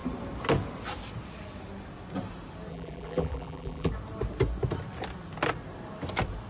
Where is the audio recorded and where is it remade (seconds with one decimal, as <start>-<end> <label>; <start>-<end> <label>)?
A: 0.0-2.7 recorded; 2.7-3.9 remade; 3.9-6.5 recorded